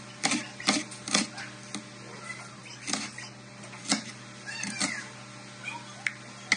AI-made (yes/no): no